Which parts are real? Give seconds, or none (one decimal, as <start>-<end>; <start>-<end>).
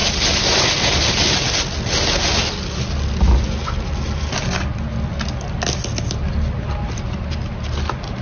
0.0-8.2